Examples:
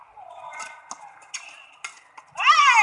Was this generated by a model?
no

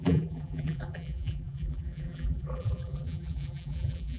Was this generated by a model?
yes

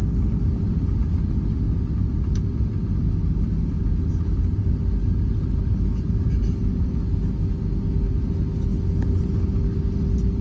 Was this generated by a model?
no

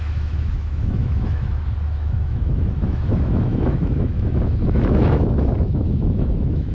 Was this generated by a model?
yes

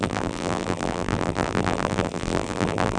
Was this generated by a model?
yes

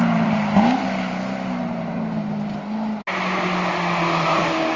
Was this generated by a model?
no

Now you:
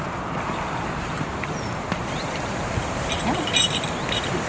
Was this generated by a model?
no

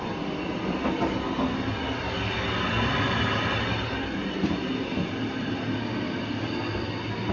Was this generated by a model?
no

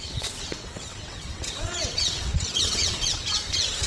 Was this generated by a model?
yes